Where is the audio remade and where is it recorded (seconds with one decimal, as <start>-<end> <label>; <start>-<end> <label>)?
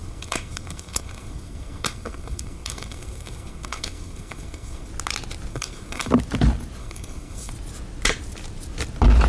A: 0.0-4.9 remade; 4.9-5.5 recorded; 5.5-6.1 remade; 6.1-6.8 recorded; 6.8-7.5 remade; 7.5-9.3 recorded